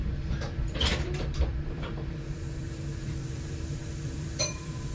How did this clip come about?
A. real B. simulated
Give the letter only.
B